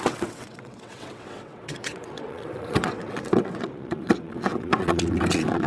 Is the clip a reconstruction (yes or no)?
yes